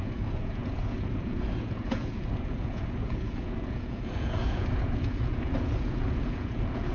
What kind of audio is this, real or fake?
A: fake